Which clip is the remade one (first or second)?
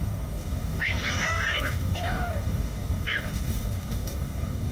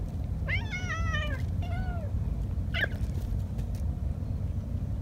first